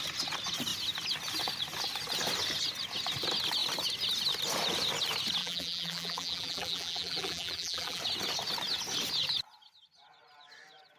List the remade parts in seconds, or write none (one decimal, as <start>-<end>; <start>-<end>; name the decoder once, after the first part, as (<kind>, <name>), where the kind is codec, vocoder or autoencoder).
5.4-8.0 (vocoder, BigVGAN v2)